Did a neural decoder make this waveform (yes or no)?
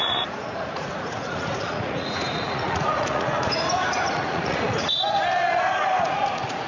yes